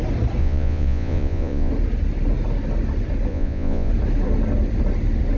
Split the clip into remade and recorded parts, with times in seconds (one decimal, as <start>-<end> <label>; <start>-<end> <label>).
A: 0.0-0.4 recorded; 0.4-1.7 remade; 1.7-3.3 recorded; 3.3-3.9 remade; 3.9-5.4 recorded